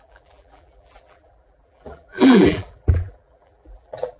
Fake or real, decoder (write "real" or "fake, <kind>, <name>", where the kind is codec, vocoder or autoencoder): fake, vocoder, BigVGAN v2